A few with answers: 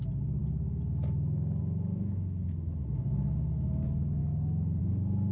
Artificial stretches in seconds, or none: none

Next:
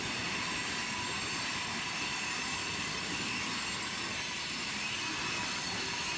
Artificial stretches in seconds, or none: 2.6-3.2 (vocoder, BigVGAN v2)

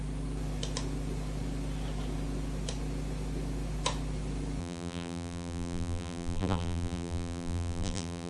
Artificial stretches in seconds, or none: 4.6-8.3 (vocoder, BigVGAN v2)

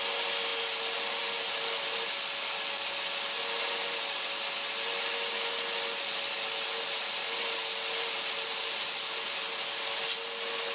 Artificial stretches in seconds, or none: none

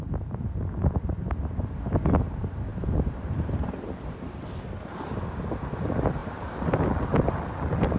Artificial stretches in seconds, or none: 2.7-4.2 (vocoder, BigVGAN v2)